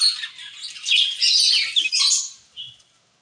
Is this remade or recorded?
recorded